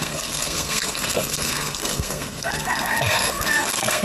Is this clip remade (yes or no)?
yes